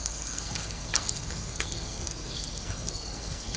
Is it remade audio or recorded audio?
remade